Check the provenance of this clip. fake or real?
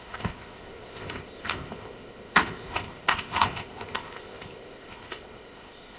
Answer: fake